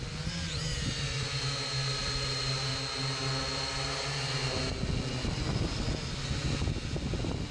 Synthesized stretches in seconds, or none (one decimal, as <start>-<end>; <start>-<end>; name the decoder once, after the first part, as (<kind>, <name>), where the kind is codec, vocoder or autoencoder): none